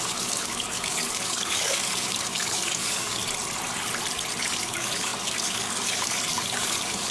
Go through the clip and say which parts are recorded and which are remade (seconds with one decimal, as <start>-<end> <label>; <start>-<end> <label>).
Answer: 0.0-3.2 remade; 3.2-4.4 recorded; 4.4-7.1 remade